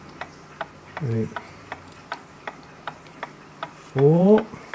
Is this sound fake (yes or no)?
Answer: yes